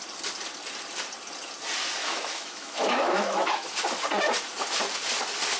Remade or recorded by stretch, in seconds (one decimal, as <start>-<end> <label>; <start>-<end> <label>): 0.0-2.0 recorded; 2.0-3.7 remade; 3.7-5.6 recorded